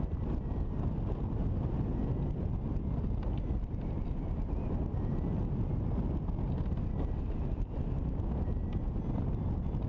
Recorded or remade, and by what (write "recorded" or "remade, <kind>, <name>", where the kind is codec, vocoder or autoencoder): recorded